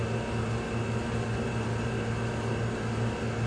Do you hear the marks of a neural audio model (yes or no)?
no